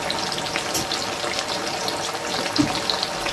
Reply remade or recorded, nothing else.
recorded